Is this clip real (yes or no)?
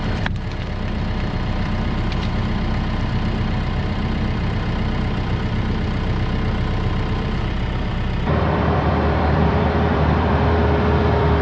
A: no